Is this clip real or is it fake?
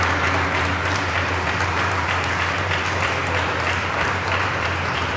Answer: fake